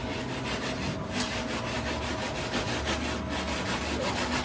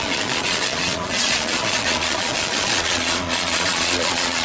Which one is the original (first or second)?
first